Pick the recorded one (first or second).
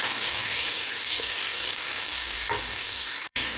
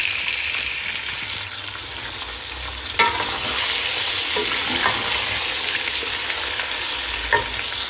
second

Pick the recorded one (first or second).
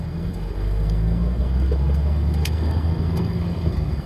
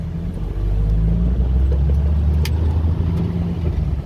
second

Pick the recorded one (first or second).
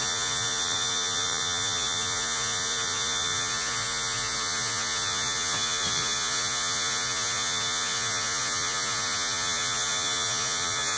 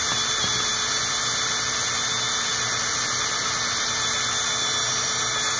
second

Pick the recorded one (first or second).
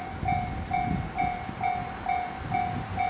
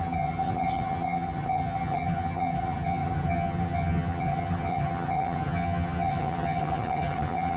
first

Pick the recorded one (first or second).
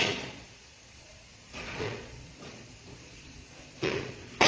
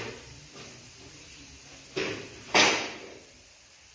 second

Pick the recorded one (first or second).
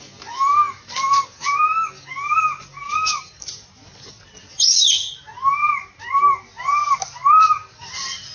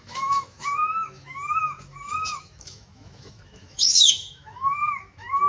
first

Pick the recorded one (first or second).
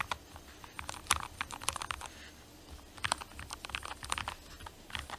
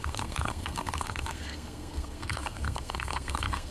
first